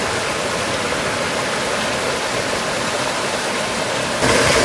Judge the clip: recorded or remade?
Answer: recorded